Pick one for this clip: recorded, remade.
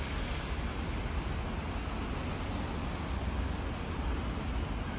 recorded